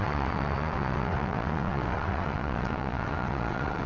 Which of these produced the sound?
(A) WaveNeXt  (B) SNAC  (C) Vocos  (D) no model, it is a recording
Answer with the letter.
A